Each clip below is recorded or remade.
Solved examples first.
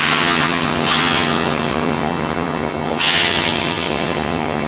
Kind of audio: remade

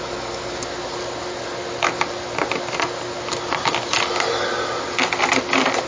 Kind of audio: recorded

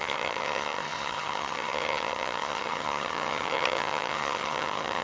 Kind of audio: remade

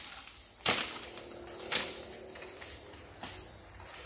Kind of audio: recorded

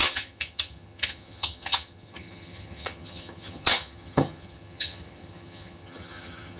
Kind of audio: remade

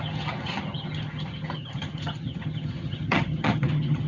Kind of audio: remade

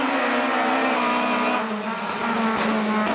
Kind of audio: recorded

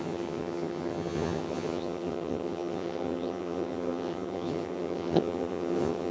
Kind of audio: remade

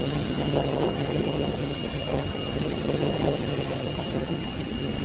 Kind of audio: remade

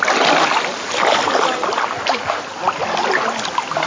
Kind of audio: recorded